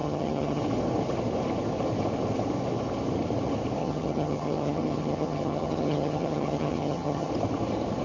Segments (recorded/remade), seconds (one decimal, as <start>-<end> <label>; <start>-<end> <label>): 0.0-0.6 remade; 0.6-3.8 recorded; 3.8-7.3 remade; 7.3-8.0 recorded